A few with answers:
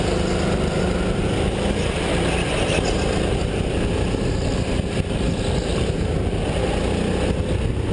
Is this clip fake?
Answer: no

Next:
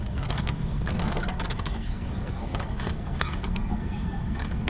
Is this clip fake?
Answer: yes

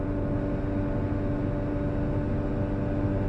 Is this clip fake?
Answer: no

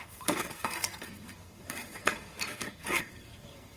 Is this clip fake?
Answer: yes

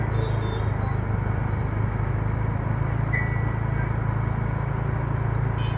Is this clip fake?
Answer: no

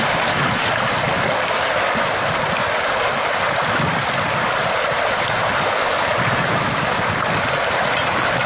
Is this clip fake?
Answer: no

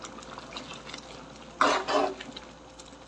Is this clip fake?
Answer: no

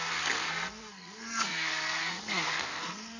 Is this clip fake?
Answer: yes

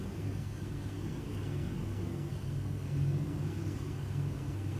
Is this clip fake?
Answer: yes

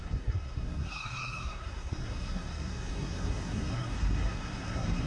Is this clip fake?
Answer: yes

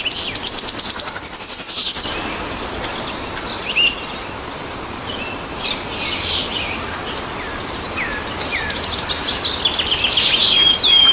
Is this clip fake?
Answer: no